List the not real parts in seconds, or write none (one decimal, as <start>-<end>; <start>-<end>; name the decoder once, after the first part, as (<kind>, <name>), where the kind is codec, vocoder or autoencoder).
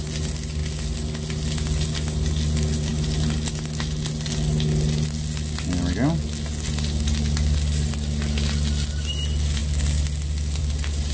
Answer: none